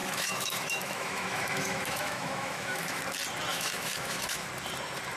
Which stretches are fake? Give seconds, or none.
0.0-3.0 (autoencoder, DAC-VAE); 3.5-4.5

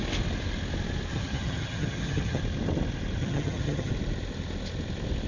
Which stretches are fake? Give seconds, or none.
1.1-2.4 (vocoder, HiFi-GAN); 3.2-3.9

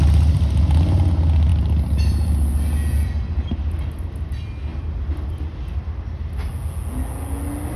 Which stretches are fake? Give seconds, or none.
1.5-2.6 (vocoder, BigVGAN v2)